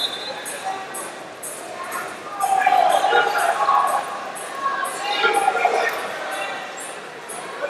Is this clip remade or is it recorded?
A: recorded